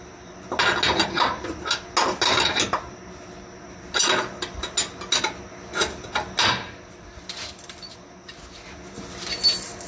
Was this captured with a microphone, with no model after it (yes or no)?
yes